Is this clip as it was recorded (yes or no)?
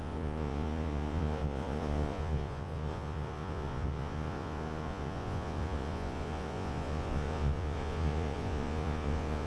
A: no